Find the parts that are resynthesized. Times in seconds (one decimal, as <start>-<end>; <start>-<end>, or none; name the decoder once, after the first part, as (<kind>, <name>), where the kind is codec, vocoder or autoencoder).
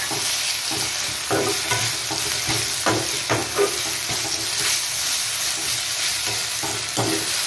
none